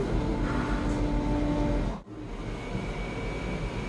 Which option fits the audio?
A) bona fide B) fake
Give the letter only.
A